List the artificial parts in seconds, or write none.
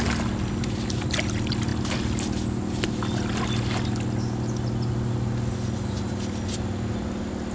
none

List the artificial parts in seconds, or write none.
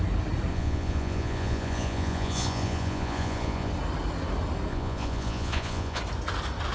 0.5-3.7 (vocoder, Vocos); 4.7-6.0